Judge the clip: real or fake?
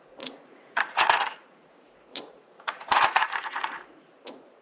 fake